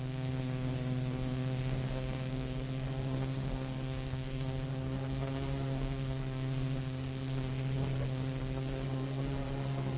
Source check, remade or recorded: remade